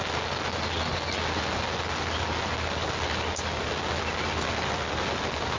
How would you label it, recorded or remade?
recorded